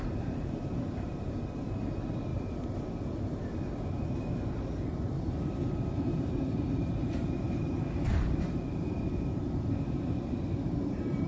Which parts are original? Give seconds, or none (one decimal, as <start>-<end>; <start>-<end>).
none